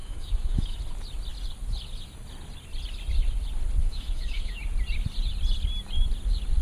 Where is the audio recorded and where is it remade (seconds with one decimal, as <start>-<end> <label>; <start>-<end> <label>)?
0.0-0.8 remade; 0.8-3.8 recorded; 3.8-4.6 remade; 4.6-6.6 recorded